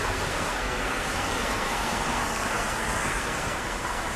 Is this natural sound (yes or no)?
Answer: no